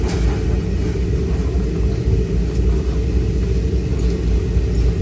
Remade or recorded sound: recorded